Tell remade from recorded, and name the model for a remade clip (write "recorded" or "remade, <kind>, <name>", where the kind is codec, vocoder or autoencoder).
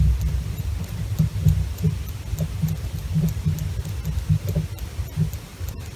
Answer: recorded